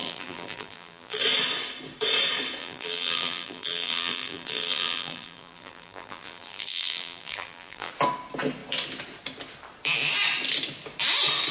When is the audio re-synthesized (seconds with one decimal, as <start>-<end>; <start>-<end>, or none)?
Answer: 0.0-1.2; 2.6-7.9